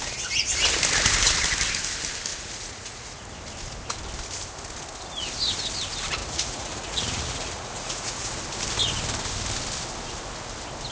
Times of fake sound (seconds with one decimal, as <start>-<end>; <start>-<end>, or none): 2.3-3.3; 6.2-8.3